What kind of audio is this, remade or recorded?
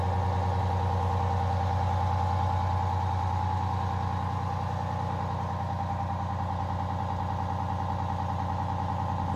recorded